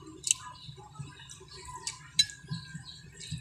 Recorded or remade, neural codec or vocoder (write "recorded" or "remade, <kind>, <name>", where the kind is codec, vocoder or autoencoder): recorded